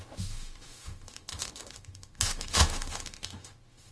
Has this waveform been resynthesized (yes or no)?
yes